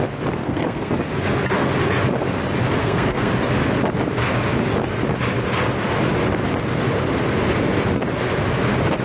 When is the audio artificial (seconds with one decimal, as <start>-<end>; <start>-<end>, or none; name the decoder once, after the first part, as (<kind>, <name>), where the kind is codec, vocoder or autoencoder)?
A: 0.4-0.9 (codec, SNAC); 2.8-3.3